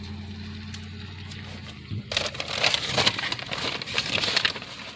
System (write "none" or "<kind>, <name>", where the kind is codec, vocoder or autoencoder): none